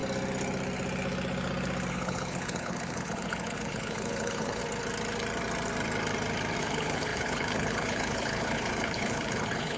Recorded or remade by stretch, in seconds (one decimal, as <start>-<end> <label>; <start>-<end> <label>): 0.0-1.9 recorded; 1.9-4.6 remade; 4.6-6.6 recorded; 6.6-9.8 remade

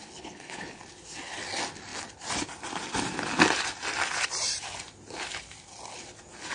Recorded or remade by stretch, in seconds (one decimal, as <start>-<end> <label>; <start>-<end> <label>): 0.0-0.8 remade; 0.8-6.5 recorded

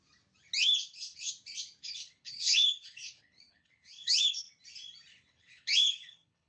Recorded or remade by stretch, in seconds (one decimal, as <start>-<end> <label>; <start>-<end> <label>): 0.0-0.6 recorded; 0.6-1.3 remade; 1.3-1.8 recorded; 1.8-4.5 remade; 4.5-5.1 recorded; 5.1-6.5 remade